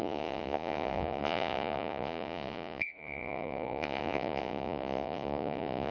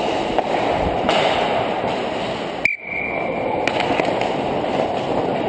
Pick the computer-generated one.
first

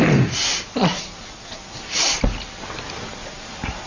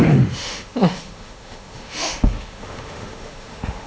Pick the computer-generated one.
second